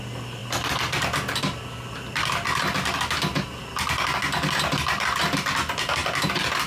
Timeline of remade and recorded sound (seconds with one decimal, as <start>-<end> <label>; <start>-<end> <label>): 0.0-6.7 recorded